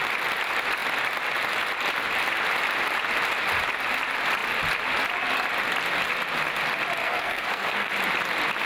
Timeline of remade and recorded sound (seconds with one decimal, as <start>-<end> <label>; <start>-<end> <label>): 0.0-7.0 recorded; 7.0-7.9 remade; 7.9-8.7 recorded